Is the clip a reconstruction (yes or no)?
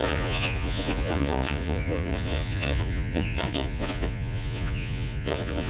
yes